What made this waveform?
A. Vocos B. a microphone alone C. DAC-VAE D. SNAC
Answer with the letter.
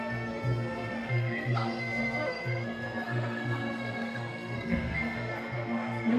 D